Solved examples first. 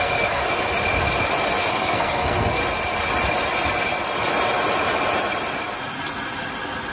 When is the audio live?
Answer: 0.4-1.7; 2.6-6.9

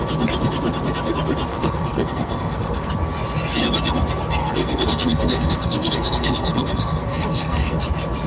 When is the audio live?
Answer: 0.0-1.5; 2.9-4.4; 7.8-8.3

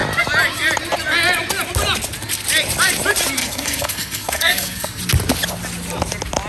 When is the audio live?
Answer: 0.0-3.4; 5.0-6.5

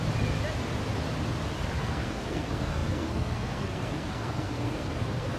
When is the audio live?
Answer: 0.0-1.8

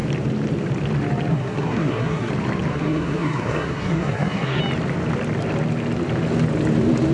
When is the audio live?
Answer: 0.0-1.3; 2.3-2.7; 4.6-7.1